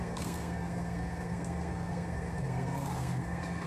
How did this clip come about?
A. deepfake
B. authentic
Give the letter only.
A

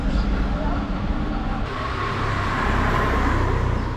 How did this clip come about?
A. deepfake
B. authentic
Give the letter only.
B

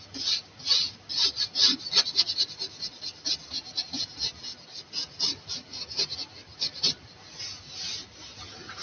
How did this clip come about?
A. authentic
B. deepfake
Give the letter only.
A